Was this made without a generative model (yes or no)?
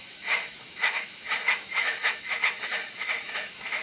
no